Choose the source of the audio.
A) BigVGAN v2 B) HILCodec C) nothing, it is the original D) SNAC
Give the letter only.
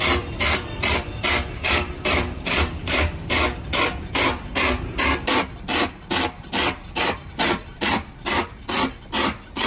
A